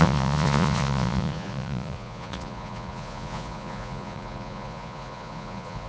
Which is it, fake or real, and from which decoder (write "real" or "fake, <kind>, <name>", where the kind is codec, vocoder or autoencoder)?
fake, vocoder, Vocos